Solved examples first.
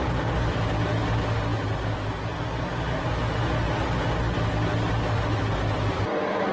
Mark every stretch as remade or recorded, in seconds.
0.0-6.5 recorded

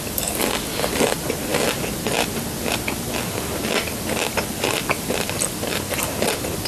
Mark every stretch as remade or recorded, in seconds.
0.0-6.7 recorded

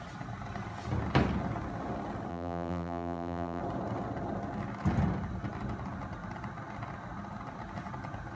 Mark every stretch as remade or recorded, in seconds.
0.0-2.3 recorded; 2.3-3.6 remade; 3.6-8.4 recorded

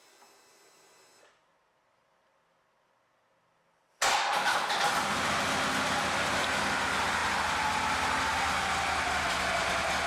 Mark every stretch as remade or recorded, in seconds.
0.0-10.1 recorded

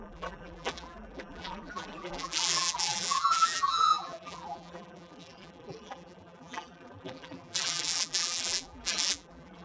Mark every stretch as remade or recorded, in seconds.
0.0-9.6 remade

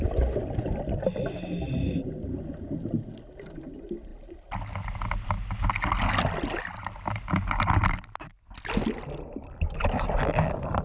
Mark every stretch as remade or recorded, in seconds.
0.0-10.8 recorded

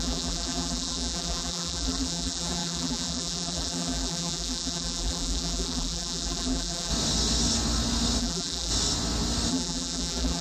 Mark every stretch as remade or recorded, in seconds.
0.0-6.9 remade; 6.9-8.2 recorded; 8.2-8.7 remade; 8.7-9.5 recorded; 9.5-10.4 remade

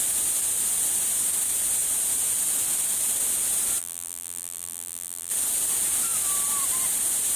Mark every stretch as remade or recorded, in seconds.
0.0-3.8 recorded; 3.8-5.3 remade; 5.3-7.4 recorded